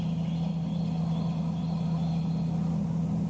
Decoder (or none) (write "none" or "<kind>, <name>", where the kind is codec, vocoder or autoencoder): none